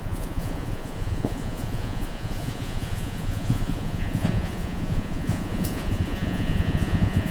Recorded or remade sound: remade